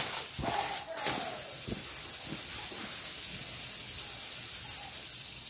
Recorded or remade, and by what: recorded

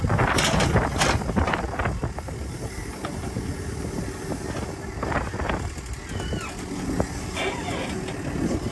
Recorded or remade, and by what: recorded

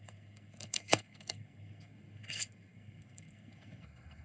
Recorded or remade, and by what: remade, codec, SNAC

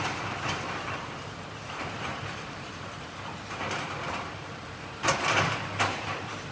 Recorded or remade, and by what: remade, vocoder, BigVGAN v2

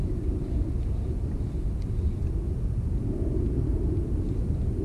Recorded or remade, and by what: recorded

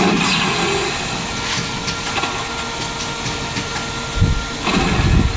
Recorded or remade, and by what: recorded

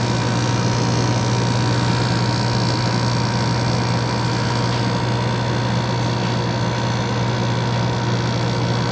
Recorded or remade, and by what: recorded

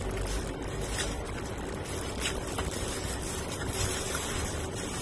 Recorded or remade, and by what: remade, vocoder, BigVGAN v2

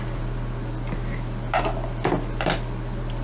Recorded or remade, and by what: recorded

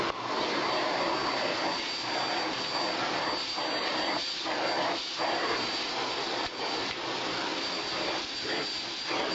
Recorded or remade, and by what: recorded